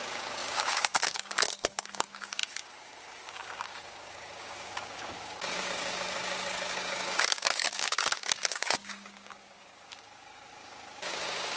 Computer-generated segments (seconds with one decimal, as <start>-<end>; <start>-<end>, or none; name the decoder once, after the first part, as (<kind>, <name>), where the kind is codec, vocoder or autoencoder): 0.0-11.6 (codec, DAC)